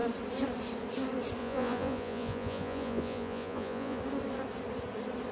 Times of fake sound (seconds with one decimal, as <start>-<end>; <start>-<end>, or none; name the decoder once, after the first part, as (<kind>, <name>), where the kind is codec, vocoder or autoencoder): 1.4-4.0 (vocoder, Vocos)